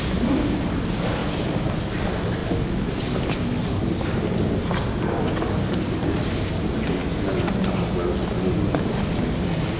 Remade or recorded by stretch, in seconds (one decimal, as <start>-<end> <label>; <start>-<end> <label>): 0.0-9.8 recorded